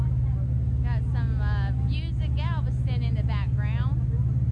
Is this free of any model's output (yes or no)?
yes